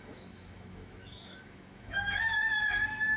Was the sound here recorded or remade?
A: remade